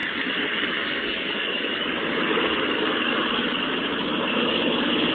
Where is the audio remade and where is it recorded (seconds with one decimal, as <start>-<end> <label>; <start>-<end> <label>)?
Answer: 0.0-3.1 remade; 3.1-4.1 recorded; 4.1-5.1 remade